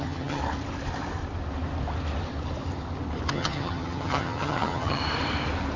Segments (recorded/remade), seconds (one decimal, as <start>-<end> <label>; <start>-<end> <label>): 0.0-0.4 remade; 0.4-3.3 recorded; 3.3-5.0 remade; 5.0-5.8 recorded